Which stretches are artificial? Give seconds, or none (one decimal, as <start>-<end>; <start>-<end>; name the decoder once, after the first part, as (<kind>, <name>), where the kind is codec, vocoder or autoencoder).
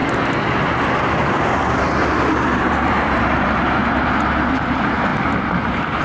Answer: 2.3-3.8 (vocoder, BigVGAN v2); 4.3-6.0